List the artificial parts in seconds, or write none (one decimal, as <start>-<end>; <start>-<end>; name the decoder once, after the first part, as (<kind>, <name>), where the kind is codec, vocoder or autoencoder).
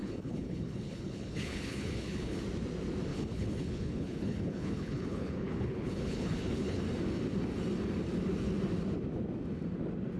0.0-2.4 (codec, HILCodec); 3.1-6.8